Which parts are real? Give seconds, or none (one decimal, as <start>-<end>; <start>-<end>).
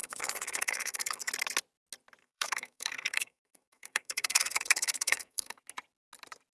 1.3-2.2; 5.6-6.5